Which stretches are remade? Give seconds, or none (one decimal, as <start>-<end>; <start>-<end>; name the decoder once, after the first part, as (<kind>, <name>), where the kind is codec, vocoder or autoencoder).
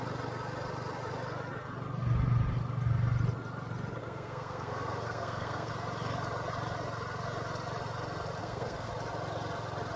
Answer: 4.0-5.7 (codec, SNAC); 8.4-8.9